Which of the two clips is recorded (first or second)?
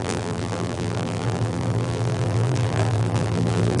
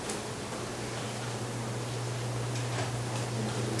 second